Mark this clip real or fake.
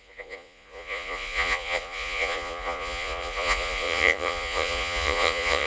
fake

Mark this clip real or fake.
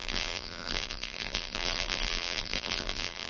fake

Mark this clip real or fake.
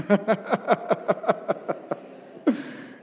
fake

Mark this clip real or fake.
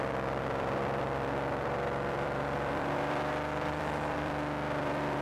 fake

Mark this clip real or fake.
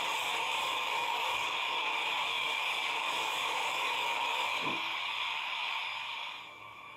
fake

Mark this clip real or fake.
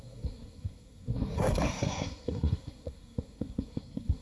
fake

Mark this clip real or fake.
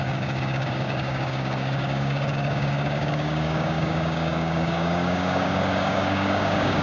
fake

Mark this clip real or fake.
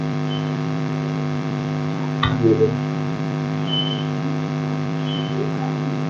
fake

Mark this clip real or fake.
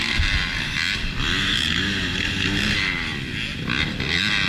real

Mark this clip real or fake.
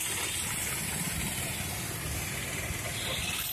real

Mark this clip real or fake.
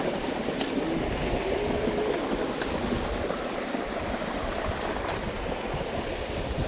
real